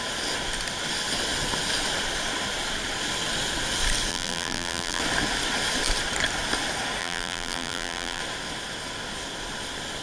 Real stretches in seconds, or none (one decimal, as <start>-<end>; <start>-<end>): 0.0-4.1; 5.0-7.0; 8.2-10.0